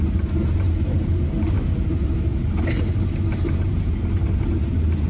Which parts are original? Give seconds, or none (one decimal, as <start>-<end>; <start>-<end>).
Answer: none